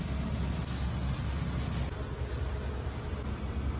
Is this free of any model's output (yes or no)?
yes